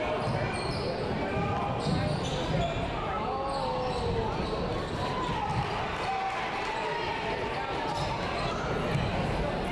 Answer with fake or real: real